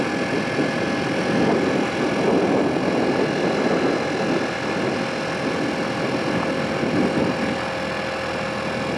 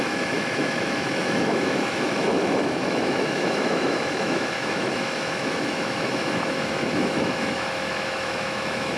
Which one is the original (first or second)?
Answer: first